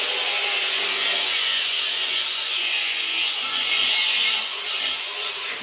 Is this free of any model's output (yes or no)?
no